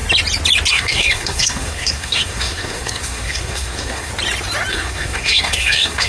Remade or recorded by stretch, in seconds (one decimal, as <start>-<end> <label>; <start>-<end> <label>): 0.0-0.7 recorded; 0.7-4.1 remade; 4.1-4.7 recorded; 4.7-6.1 remade